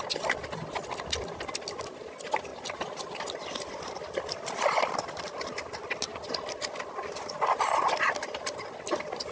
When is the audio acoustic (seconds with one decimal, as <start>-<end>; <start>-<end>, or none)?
0.0-9.3